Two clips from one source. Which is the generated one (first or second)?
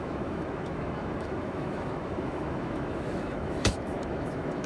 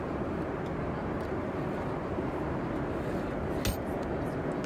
first